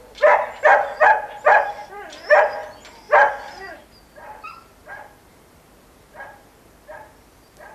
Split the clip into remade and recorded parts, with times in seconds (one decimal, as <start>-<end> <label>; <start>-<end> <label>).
0.0-2.6 remade; 2.6-3.3 recorded; 3.3-7.7 remade